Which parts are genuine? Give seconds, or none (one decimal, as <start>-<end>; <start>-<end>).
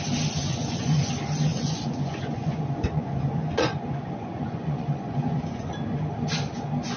0.0-0.4; 1.1-1.5; 5.7-7.0